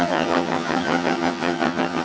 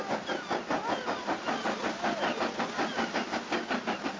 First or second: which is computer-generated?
first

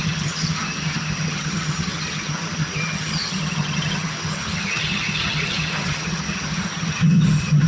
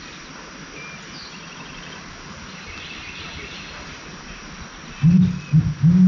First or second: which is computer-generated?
first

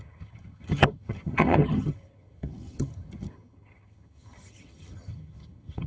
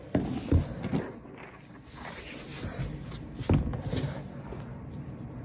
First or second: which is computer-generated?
first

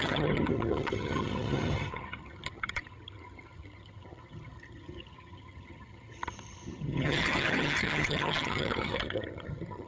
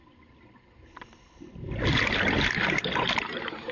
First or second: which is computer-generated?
first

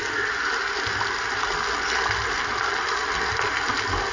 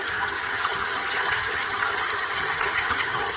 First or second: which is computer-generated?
second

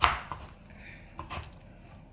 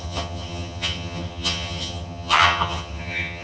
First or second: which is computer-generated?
second